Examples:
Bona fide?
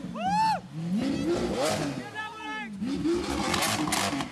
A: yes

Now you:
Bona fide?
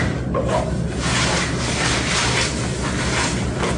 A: yes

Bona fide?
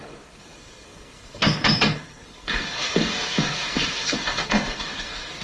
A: no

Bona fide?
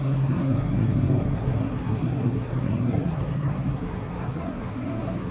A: no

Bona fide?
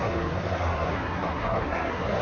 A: no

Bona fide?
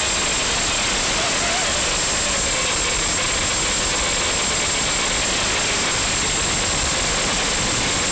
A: yes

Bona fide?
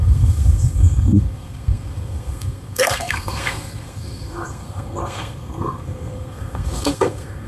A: no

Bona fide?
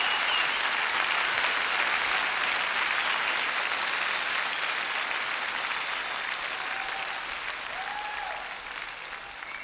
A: yes